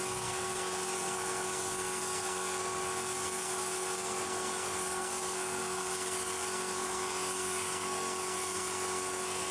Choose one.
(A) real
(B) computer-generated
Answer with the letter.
B